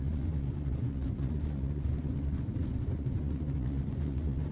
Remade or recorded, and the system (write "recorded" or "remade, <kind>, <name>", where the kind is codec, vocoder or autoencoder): remade, vocoder, Vocos